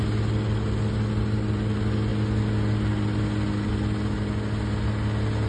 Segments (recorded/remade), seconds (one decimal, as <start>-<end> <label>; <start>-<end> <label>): 0.0-5.5 recorded